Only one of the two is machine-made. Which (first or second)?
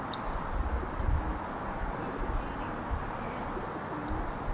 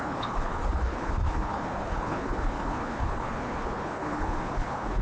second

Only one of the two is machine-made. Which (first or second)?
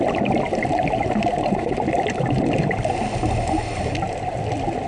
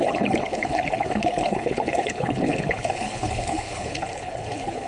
second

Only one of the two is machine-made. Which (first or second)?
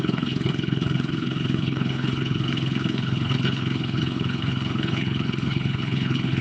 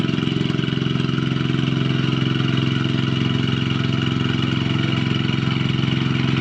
first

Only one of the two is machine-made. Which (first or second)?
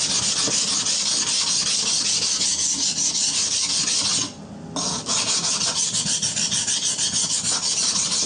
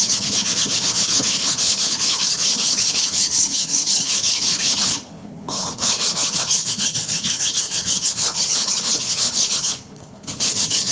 second